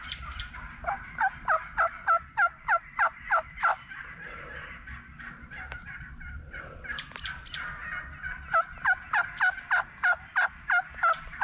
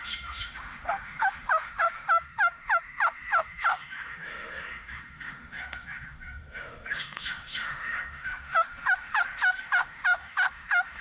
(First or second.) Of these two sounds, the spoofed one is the second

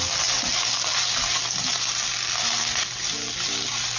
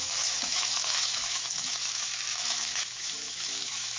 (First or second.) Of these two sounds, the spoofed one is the second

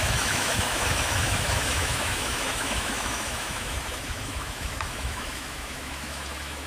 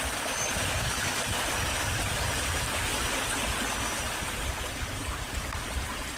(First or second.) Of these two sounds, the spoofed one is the first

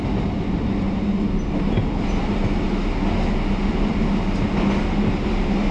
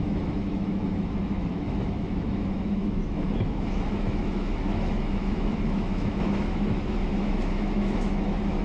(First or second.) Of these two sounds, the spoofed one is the second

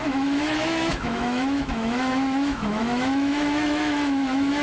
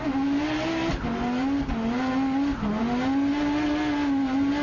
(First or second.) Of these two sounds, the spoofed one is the first